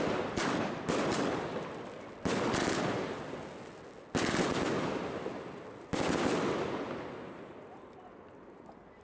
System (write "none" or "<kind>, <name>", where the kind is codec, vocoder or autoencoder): none